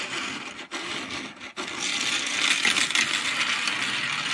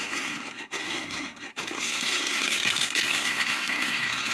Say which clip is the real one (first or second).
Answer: first